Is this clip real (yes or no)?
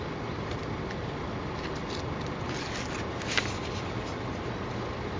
yes